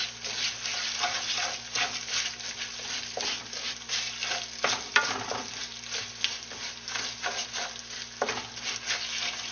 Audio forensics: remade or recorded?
recorded